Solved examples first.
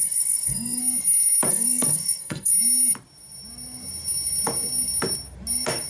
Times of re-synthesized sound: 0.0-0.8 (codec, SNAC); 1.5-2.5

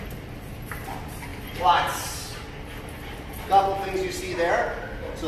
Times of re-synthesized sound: none

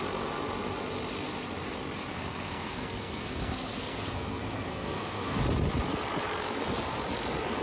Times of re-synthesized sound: 2.1-5.4 (codec, SNAC)

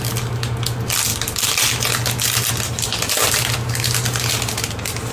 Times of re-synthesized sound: none

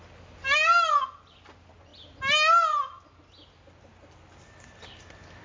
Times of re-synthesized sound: none

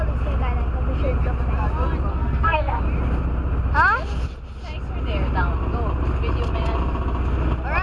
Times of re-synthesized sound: 2.1-2.8 (codec, SNAC)

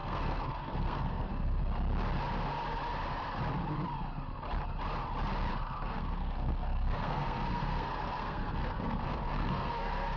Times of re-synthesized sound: 0.0-1.6 (codec, SNAC); 5.5-10.2

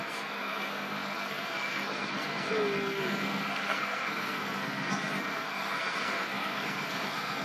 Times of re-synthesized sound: 0.0-7.4 (codec, SNAC)